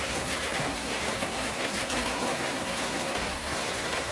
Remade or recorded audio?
remade